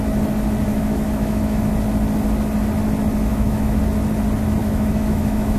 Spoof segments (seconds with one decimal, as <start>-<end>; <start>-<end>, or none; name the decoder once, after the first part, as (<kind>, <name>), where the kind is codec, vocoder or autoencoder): 0.7-1.6 (autoencoder, DAC-VAE); 3.3-3.8; 4.6-5.6

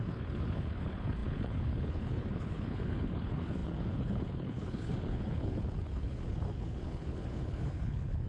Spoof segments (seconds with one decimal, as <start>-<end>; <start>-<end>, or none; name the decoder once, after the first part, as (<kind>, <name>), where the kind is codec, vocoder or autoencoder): 0.0-8.3 (codec, HILCodec)

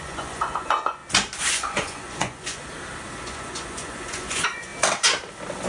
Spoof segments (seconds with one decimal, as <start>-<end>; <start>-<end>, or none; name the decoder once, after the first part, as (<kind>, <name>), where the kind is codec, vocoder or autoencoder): 0.0-1.0 (vocoder, Vocos); 1.5-2.6; 3.2-4.7

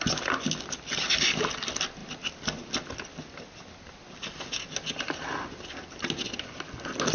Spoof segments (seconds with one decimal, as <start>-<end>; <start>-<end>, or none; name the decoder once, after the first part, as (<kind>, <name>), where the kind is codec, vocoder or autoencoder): none

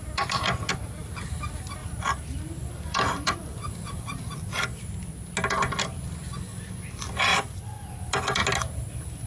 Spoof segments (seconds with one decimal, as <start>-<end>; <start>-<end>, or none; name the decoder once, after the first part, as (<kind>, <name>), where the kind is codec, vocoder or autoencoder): 1.8-4.3 (vocoder, BigVGAN v2); 7.3-8.0

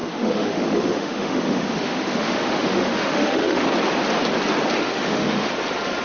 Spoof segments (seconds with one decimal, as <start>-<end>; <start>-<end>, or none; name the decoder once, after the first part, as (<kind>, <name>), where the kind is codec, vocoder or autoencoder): 0.0-3.6 (autoencoder, DAC-VAE); 4.8-5.5

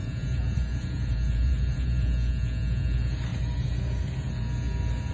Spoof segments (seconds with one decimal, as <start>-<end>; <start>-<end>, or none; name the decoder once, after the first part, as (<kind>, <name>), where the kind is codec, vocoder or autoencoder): 0.0-2.0 (vocoder, BigVGAN v2); 3.3-4.3